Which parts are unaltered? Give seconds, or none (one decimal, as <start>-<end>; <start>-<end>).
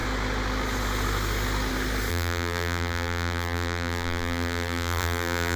0.0-2.1